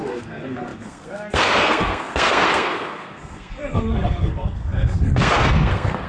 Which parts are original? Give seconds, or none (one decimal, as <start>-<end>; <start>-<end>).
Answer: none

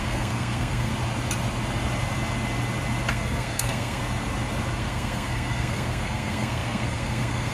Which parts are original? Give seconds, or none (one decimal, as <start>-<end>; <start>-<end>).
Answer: 0.9-3.1; 4.0-4.8

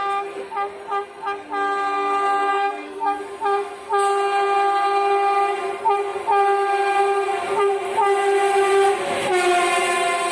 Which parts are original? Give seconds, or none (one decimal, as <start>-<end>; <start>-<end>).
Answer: 0.0-2.5; 3.2-10.3

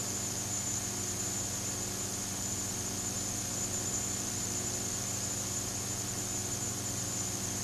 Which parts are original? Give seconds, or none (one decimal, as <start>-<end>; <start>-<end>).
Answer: 0.0-7.6